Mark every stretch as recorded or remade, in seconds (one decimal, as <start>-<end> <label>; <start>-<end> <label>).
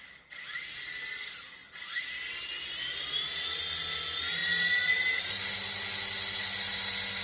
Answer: 0.0-4.4 recorded; 4.4-5.3 remade; 5.3-7.2 recorded